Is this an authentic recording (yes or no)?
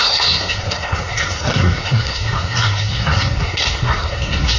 no